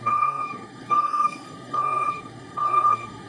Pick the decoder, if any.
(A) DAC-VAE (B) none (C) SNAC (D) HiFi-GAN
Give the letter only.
C